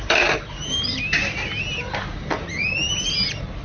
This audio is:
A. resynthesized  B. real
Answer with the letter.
B